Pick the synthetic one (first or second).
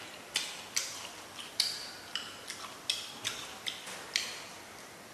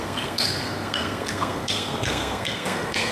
second